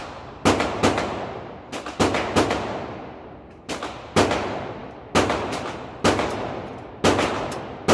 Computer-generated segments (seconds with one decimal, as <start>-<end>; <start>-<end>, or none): none